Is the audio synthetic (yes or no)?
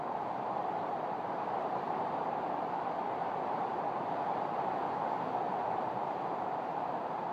yes